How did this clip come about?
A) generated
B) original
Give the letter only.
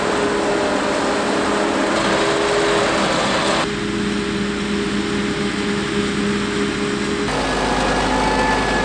B